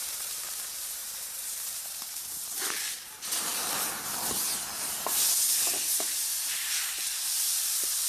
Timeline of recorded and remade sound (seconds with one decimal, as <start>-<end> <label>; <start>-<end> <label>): 0.0-3.6 remade; 3.6-5.9 recorded; 5.9-8.1 remade